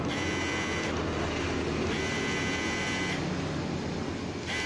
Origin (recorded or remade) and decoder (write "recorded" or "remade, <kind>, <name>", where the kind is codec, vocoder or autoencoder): recorded